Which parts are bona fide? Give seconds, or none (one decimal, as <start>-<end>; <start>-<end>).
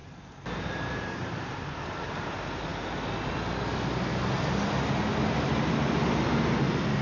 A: 1.6-7.0